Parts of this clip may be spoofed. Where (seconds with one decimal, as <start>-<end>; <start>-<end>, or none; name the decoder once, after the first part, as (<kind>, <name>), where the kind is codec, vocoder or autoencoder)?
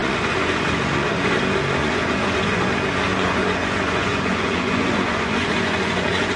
0.0-1.4 (vocoder, Vocos); 1.8-2.7; 3.1-6.4